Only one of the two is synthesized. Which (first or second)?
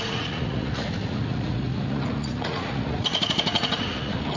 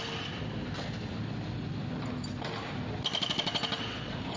first